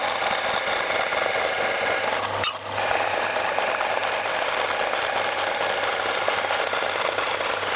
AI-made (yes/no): no